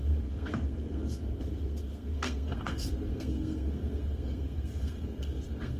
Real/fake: fake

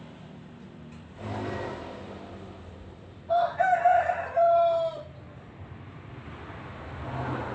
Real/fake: real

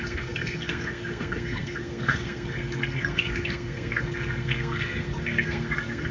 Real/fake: fake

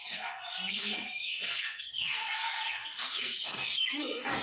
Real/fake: fake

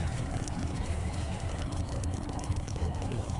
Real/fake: fake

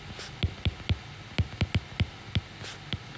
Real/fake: real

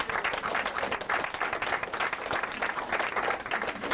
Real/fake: real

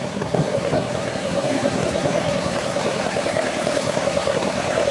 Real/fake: fake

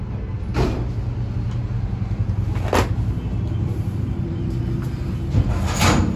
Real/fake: real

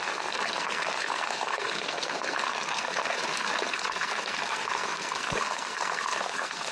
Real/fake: fake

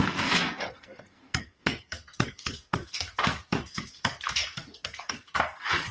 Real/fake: fake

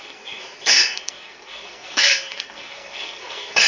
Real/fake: fake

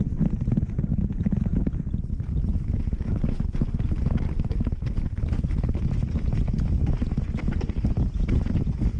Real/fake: real